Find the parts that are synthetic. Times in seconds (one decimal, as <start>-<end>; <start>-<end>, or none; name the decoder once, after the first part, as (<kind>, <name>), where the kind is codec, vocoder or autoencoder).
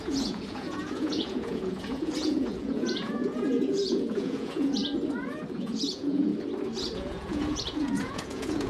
0.0-4.8 (vocoder, Vocos); 5.5-6.3; 6.8-8.7